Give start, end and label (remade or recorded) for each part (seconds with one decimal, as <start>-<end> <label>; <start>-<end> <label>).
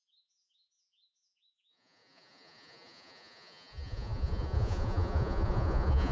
0.0-6.1 remade